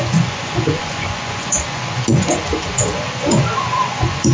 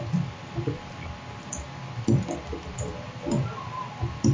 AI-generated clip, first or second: first